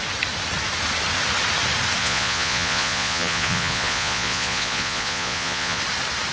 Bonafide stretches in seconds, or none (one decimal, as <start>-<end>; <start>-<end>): 0.0-2.0; 5.8-6.3